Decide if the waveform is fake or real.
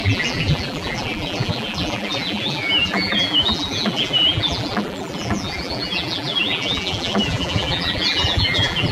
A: fake